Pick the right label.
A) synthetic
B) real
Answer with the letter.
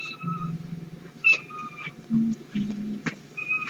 B